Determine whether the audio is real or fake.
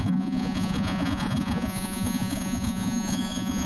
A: fake